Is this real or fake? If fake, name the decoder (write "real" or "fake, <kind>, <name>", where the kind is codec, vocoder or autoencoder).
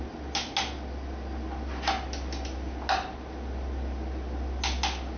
real